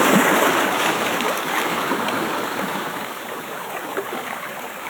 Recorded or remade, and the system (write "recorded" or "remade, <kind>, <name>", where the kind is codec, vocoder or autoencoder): remade, codec, DAC